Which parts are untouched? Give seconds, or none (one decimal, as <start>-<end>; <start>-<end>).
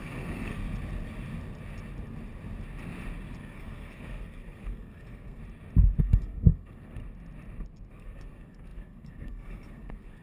0.6-3.4; 5.4-6.0; 7.0-7.9